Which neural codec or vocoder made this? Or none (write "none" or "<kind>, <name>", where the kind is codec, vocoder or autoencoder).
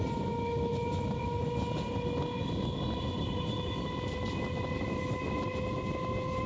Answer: none